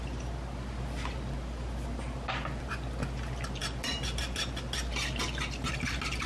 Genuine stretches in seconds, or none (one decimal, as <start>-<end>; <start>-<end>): 0.0-6.3